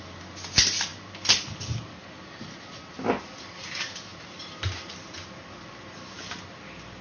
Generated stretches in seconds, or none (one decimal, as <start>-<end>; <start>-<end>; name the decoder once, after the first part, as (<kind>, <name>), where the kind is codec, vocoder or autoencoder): 4.1-6.0 (vocoder, BigVGAN v2)